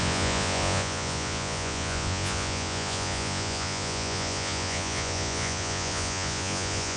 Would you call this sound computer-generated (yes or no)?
yes